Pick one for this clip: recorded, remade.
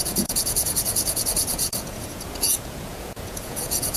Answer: remade